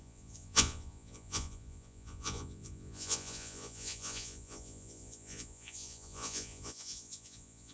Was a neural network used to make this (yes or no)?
yes